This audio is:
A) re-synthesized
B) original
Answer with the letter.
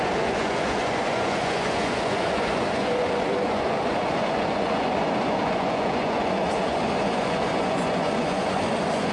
A